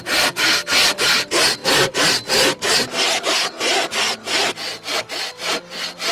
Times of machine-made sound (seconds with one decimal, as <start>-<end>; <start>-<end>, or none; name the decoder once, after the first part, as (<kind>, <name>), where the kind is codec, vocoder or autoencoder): none

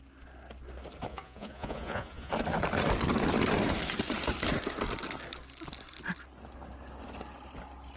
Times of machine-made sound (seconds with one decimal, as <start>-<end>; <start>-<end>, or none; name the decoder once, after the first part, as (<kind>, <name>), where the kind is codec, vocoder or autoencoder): 1.1-2.3 (vocoder, Vocos)

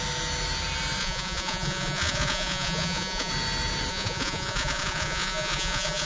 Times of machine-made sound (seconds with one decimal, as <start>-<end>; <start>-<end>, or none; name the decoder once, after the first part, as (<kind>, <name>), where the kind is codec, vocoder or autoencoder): 1.0-3.3 (vocoder, Vocos); 3.9-6.1